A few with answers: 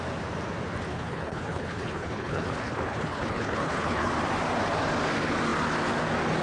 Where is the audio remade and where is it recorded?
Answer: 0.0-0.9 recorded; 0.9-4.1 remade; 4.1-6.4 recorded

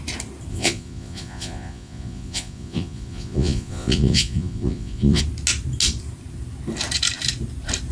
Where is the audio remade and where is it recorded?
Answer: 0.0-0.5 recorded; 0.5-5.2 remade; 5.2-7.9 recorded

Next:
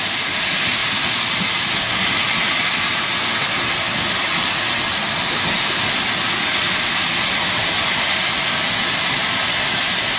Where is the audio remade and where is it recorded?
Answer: 0.0-10.2 recorded

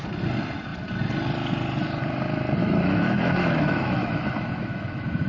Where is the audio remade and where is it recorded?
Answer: 0.0-2.6 recorded; 2.6-5.3 remade

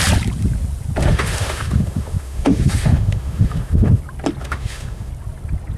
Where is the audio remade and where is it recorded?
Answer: 0.0-1.0 recorded; 1.0-4.0 remade; 4.0-4.4 recorded; 4.4-5.1 remade; 5.1-5.8 recorded

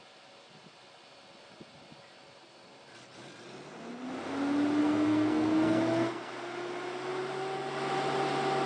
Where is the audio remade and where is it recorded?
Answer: 0.0-4.8 recorded; 4.8-6.3 remade; 6.3-8.7 recorded

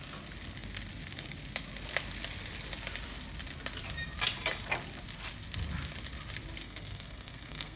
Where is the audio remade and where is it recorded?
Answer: 0.0-6.6 recorded; 6.6-7.8 remade